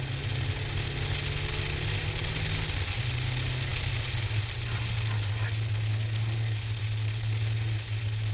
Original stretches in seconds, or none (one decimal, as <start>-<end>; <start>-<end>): 0.0-8.3